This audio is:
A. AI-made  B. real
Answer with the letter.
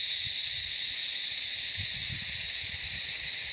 B